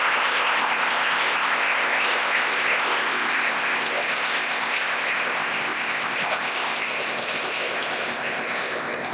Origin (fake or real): fake